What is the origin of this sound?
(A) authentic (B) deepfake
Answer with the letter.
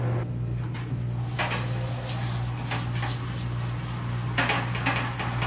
A